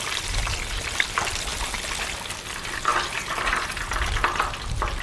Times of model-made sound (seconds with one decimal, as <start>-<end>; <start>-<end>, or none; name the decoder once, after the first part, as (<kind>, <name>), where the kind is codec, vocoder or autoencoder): 2.9-3.7 (vocoder, BigVGAN v2)